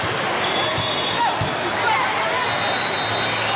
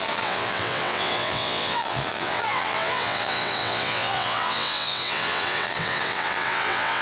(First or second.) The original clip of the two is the first